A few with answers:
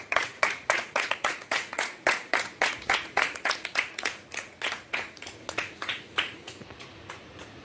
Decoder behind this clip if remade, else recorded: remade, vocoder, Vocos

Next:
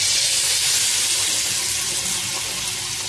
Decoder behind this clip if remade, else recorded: recorded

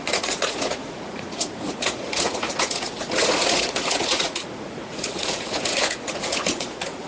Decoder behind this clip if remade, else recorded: remade, vocoder, Vocos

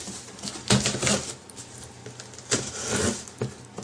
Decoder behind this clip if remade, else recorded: recorded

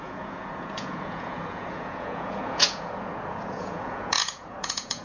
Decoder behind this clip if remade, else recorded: remade, vocoder, Vocos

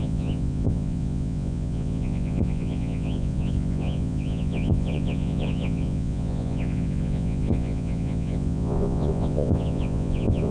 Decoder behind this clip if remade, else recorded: remade, vocoder, Vocos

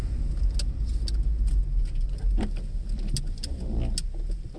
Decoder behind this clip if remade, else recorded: recorded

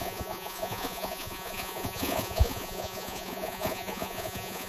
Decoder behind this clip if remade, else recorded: remade, vocoder, Vocos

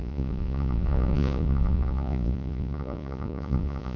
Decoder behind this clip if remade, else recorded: remade, vocoder, Vocos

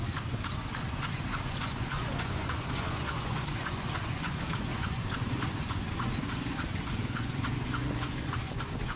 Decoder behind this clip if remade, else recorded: remade, vocoder, Vocos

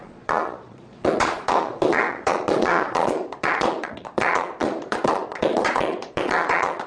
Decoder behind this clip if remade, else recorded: remade, vocoder, Vocos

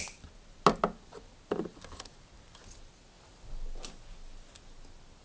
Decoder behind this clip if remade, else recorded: recorded